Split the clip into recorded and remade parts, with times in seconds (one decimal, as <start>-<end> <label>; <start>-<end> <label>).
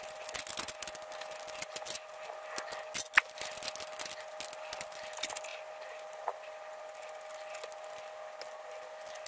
0.0-9.3 recorded